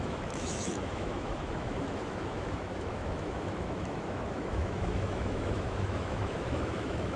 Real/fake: fake